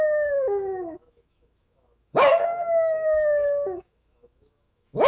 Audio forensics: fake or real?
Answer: fake